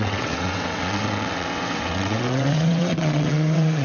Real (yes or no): no